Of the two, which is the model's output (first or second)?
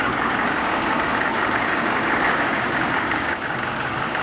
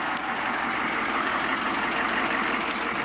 first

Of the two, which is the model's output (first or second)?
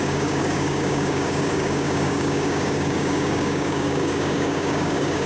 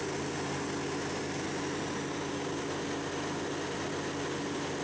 first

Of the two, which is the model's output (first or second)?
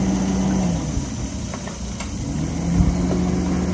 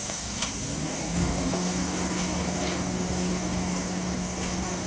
second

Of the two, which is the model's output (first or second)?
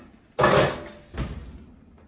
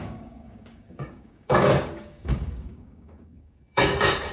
second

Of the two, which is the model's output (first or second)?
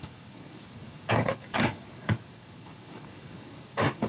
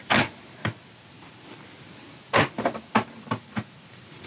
first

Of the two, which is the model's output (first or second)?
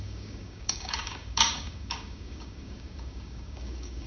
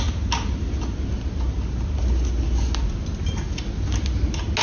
first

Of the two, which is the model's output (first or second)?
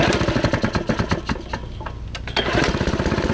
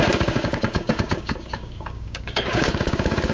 second